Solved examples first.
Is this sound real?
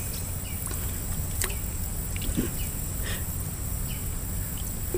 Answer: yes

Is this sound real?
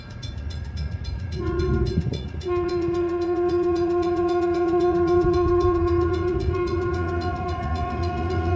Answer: no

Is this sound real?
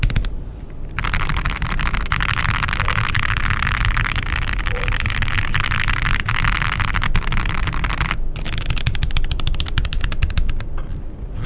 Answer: yes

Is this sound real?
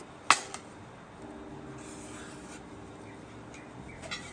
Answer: yes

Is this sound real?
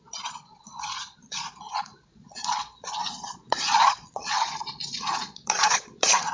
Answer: no